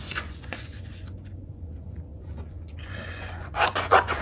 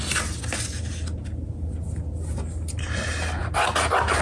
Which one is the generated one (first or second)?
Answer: first